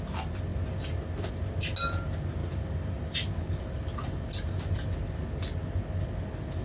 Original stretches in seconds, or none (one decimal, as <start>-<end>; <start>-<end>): 0.0-6.6